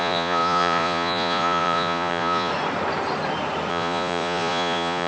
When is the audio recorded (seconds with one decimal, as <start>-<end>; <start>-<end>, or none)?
2.5-3.7